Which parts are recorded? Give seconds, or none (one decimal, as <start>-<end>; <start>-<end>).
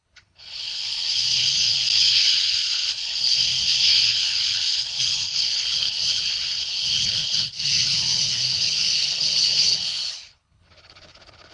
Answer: none